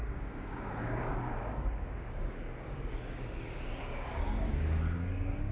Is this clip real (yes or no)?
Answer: no